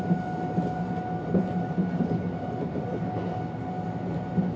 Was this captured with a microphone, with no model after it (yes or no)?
yes